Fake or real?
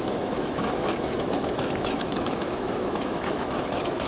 fake